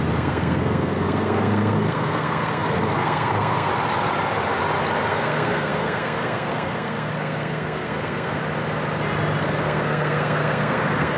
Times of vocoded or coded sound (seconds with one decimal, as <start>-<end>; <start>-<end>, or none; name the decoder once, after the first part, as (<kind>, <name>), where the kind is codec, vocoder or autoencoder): 0.0-3.7 (codec, SNAC); 5.1-8.4; 9.4-11.2